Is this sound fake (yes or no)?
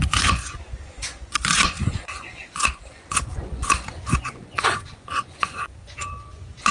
yes